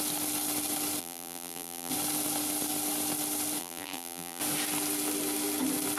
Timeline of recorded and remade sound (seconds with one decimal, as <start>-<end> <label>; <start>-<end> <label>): 0.0-1.0 recorded; 1.0-1.9 remade; 1.9-3.6 recorded; 3.6-4.4 remade; 4.4-6.0 recorded